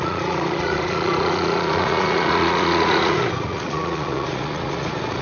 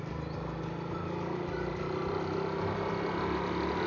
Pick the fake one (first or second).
first